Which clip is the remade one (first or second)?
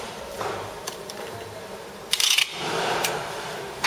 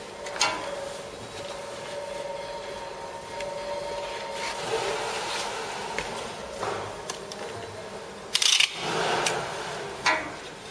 first